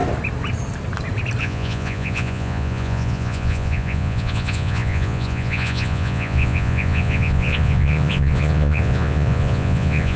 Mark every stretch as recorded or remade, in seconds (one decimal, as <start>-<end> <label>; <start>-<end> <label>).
0.0-1.4 recorded; 1.4-10.2 remade